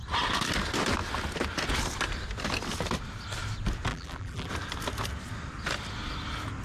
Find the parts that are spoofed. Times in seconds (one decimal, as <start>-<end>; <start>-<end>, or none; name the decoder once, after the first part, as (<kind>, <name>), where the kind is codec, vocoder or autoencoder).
3.9-4.5 (vocoder, BigVGAN v2)